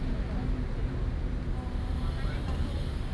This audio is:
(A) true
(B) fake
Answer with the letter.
A